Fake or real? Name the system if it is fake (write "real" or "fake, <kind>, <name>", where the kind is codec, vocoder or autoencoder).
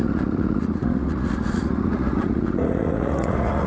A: fake, vocoder, Vocos